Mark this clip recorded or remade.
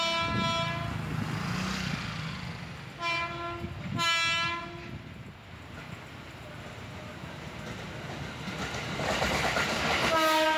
recorded